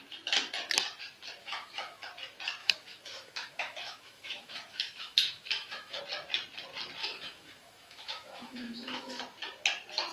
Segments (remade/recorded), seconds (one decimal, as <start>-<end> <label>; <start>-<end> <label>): 0.0-1.4 recorded; 1.4-2.1 remade; 2.1-2.6 recorded; 2.6-6.0 remade; 6.0-7.0 recorded; 7.0-9.2 remade; 9.2-10.1 recorded